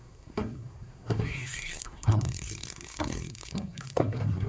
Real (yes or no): no